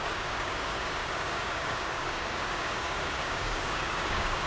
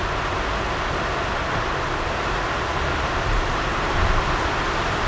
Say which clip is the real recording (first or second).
second